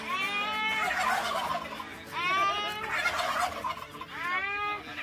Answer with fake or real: real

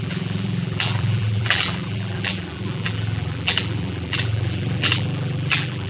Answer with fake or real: fake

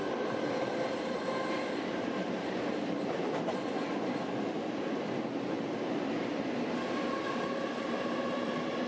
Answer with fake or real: fake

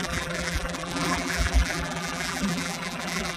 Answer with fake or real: fake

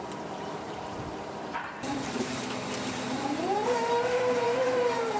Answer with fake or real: fake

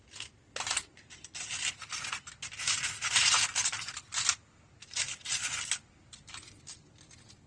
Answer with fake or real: real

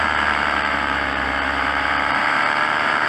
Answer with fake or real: fake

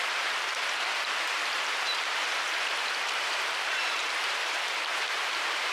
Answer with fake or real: fake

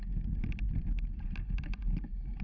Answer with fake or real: real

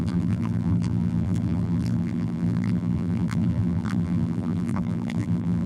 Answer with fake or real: fake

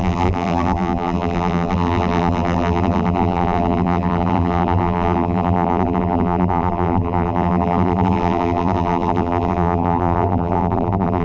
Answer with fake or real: fake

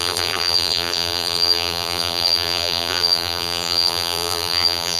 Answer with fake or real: fake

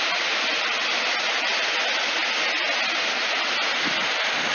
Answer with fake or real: real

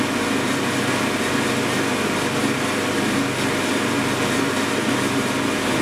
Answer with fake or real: real